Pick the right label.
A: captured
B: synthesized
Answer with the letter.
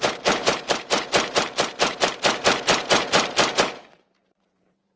B